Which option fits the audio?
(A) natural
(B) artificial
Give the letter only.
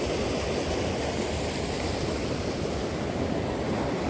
A